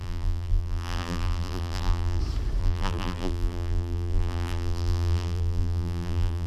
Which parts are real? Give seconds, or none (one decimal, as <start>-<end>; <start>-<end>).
2.2-2.6